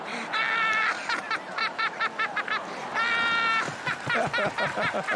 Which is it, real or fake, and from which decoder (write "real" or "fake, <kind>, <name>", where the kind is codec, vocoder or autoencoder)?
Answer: real